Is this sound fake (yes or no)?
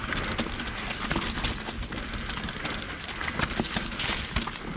no